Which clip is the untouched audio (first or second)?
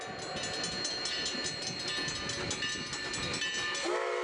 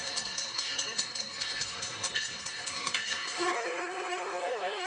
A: first